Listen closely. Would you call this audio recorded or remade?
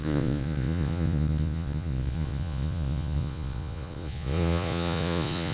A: remade